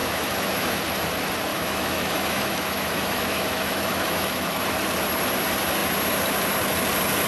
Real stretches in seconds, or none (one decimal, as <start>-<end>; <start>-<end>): 0.8-1.5; 4.6-7.3